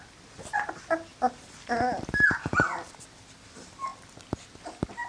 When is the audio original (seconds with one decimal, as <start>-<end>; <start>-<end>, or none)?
none